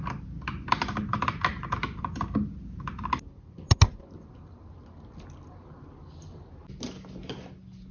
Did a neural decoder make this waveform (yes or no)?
no